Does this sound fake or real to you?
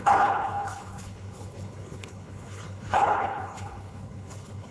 fake